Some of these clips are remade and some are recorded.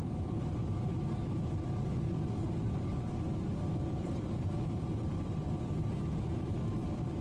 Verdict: remade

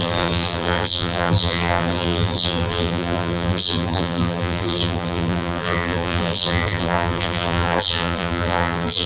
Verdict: remade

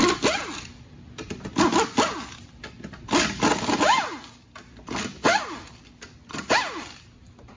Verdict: recorded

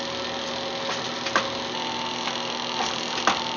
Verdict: recorded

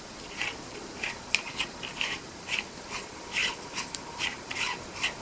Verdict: remade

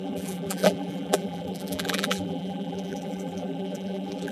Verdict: remade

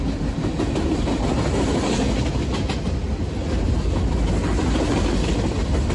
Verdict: recorded